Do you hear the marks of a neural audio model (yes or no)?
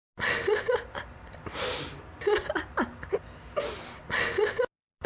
no